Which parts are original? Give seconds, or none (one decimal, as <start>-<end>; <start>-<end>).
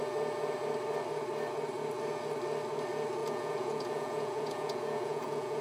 0.0-3.2